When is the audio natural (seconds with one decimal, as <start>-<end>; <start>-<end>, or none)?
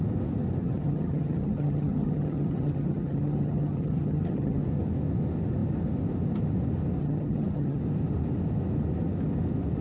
0.0-0.6; 4.6-7.0; 7.8-9.8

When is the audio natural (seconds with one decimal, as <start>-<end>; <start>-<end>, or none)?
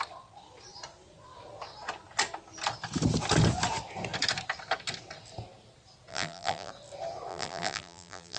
0.0-6.1; 6.7-7.3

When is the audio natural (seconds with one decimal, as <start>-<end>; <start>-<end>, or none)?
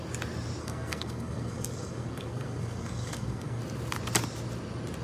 0.0-0.6; 3.6-5.0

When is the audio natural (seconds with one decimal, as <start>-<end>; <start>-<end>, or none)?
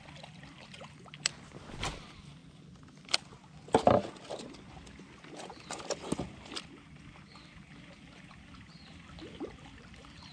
0.0-10.3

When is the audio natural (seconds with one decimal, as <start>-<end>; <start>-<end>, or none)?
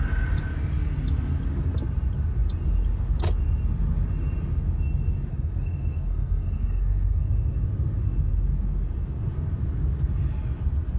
0.0-5.3; 7.3-11.0